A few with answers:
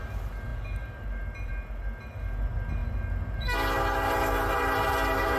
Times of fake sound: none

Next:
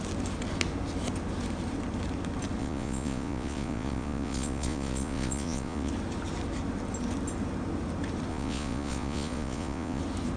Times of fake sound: 2.6-5.9 (vocoder, Vocos); 8.3-10.0

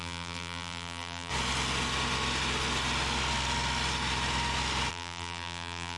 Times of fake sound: 0.0-1.3 (vocoder, BigVGAN v2); 4.9-6.0